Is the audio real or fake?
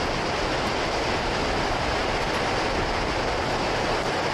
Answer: real